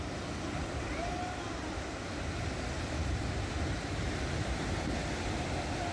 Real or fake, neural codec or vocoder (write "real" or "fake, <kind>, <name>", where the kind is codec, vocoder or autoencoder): real